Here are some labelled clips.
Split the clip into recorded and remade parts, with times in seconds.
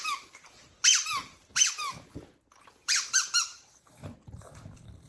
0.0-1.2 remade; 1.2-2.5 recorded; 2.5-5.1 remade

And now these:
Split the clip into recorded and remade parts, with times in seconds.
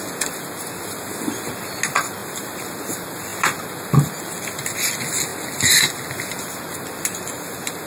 0.0-2.2 recorded; 2.2-2.8 remade; 2.8-3.3 recorded; 3.3-4.1 remade; 4.1-7.9 recorded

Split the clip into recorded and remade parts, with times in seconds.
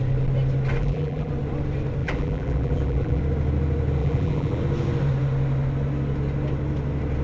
0.0-0.8 recorded; 0.8-1.3 remade; 1.3-2.0 recorded; 2.0-3.2 remade; 3.2-4.0 recorded; 4.0-4.6 remade; 4.6-7.2 recorded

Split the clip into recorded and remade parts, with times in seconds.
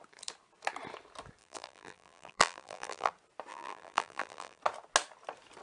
0.0-1.4 recorded; 1.4-3.1 remade; 3.1-3.5 recorded; 3.5-4.6 remade; 4.6-5.6 recorded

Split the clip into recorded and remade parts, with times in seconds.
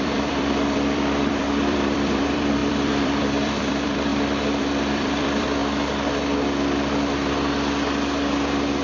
0.0-4.1 remade; 4.1-4.6 recorded; 4.6-5.6 remade; 5.6-8.8 recorded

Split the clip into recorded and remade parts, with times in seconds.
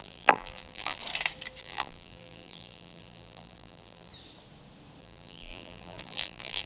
0.0-1.0 remade; 1.0-1.6 recorded; 1.6-4.1 remade; 4.1-5.0 recorded; 5.0-6.7 remade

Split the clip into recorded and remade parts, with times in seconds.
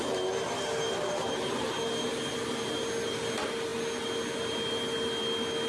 0.0-5.7 recorded